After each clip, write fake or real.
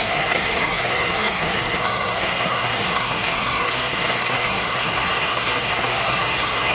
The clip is fake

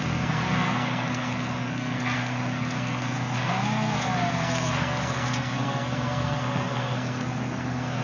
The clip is fake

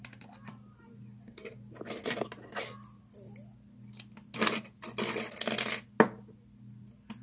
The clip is real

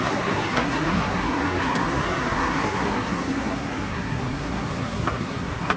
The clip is fake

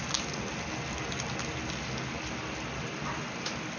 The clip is real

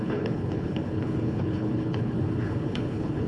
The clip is fake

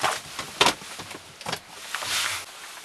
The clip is real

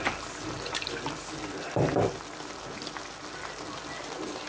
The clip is real